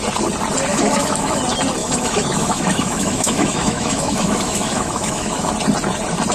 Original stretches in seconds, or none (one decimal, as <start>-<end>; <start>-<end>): 0.0-0.7; 1.4-1.8; 5.5-6.3